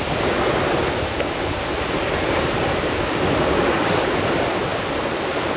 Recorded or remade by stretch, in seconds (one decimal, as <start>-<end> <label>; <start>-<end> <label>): 0.0-5.6 recorded